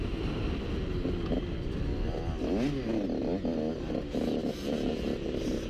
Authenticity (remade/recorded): recorded